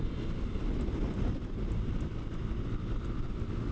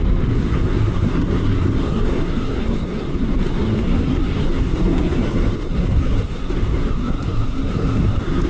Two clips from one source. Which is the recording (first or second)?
first